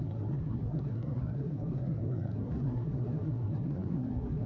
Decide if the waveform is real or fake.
fake